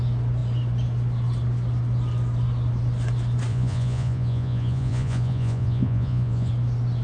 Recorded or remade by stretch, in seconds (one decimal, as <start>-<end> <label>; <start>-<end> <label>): 0.0-3.5 recorded; 3.5-6.5 remade; 6.5-7.0 recorded

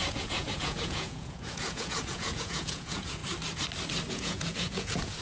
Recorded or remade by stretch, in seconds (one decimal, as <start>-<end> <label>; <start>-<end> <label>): 0.0-3.2 remade; 3.2-4.1 recorded; 4.1-5.2 remade

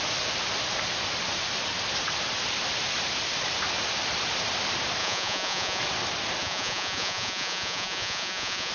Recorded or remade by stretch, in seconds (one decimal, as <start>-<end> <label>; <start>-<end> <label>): 0.0-5.0 recorded; 5.0-5.8 remade; 5.8-6.4 recorded; 6.4-8.7 remade

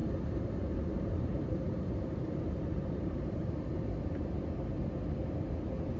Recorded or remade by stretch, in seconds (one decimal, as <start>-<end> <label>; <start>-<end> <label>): 0.0-3.6 remade; 3.6-6.0 recorded

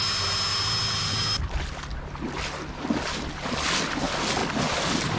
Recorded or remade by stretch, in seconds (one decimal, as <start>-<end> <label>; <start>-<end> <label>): 0.0-4.4 recorded; 4.4-5.2 remade

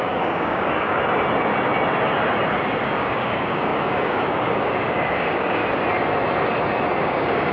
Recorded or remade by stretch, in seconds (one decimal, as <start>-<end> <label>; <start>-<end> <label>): 0.0-1.0 remade; 1.0-2.8 recorded; 2.8-5.6 remade; 5.6-7.0 recorded; 7.0-7.5 remade

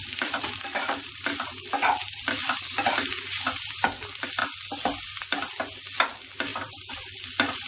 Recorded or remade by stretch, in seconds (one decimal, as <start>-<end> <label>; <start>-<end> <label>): 0.0-4.4 remade; 4.4-5.2 recorded; 5.2-7.7 remade